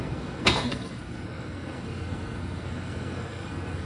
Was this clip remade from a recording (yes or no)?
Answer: yes